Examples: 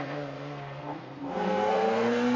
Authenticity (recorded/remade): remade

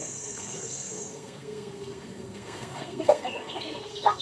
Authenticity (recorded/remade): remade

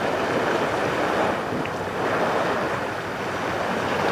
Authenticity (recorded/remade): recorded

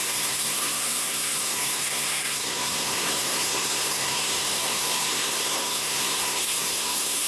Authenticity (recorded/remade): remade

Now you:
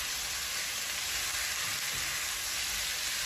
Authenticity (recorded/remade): recorded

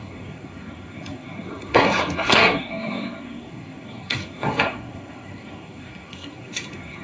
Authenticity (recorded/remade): remade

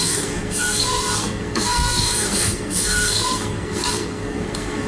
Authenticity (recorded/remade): remade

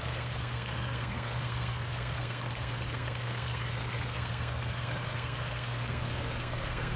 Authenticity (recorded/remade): remade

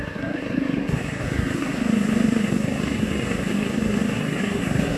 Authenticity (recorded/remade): remade